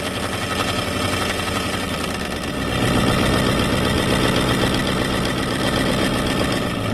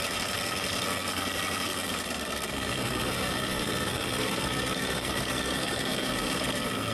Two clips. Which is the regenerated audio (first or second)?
second